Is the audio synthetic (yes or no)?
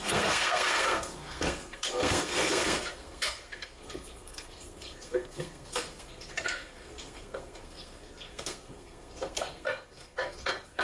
yes